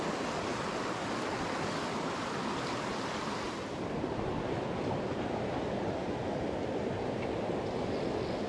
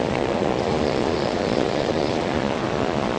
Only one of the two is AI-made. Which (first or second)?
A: second